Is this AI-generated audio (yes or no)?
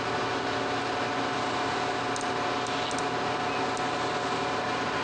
no